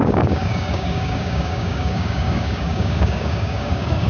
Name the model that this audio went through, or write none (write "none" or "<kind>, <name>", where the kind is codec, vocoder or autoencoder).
codec, DAC